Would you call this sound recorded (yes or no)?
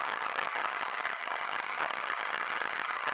no